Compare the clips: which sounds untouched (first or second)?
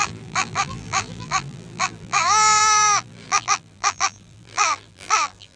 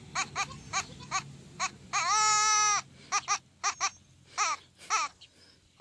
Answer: second